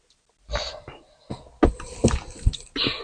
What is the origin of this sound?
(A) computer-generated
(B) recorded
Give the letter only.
B